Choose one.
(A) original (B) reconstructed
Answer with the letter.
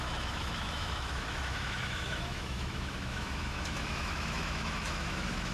B